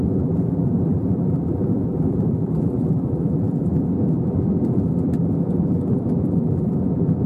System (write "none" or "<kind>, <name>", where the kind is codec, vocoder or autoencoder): vocoder, BigVGAN v2